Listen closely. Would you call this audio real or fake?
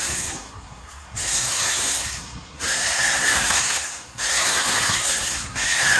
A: fake